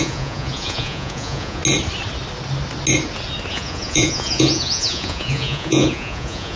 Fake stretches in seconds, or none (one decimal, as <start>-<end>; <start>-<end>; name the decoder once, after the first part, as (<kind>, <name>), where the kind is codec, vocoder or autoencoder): 0.0-1.6 (vocoder, Vocos); 3.5-6.6